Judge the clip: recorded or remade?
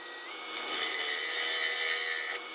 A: recorded